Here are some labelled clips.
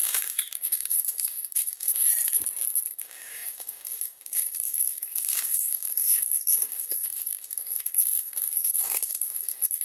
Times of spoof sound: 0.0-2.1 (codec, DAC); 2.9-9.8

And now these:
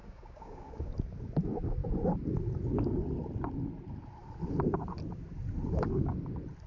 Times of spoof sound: 0.0-0.9 (codec, DAC)

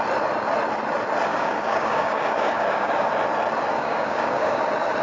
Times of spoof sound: 1.3-3.1 (codec, DAC); 3.7-4.6

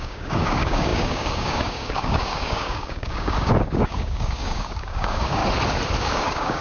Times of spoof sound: 0.0-5.4 (codec, DAC); 6.0-6.6

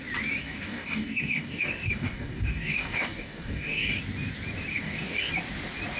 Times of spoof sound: 0.4-4.0 (codec, DAC); 4.7-5.3